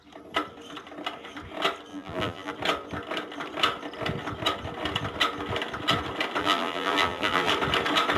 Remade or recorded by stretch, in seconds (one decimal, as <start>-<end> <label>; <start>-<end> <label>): 0.0-1.9 recorded; 1.9-2.5 remade; 2.5-6.4 recorded; 6.4-7.5 remade; 7.5-8.2 recorded